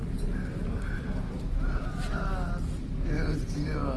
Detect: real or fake real